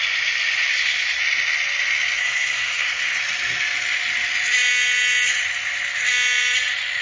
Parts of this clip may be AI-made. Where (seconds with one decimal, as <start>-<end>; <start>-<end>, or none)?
0.7-1.2; 2.2-3.2

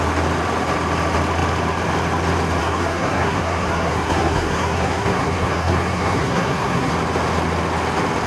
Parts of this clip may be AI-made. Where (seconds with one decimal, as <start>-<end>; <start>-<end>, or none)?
2.6-6.9

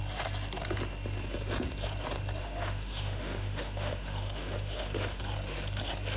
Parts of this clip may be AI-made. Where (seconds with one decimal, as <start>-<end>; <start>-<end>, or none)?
2.4-5.2

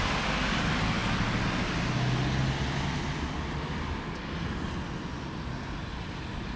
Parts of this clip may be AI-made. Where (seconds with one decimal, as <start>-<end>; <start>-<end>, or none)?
none

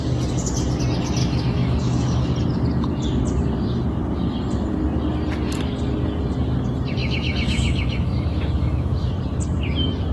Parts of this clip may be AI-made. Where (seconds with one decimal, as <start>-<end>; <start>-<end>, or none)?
1.2-2.3; 7.0-9.1

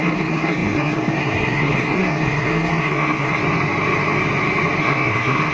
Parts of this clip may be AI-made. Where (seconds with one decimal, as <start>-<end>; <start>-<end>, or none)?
0.0-3.4; 4.8-5.5

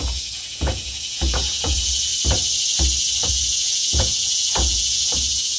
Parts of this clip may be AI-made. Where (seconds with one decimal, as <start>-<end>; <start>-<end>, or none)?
0.0-2.1; 3.3-5.6

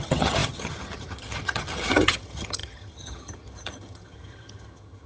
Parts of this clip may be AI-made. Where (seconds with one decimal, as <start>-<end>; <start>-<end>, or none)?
0.0-5.1